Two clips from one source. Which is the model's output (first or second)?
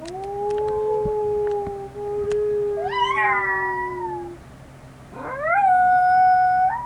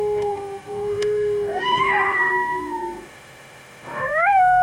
second